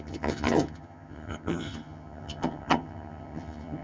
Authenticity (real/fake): fake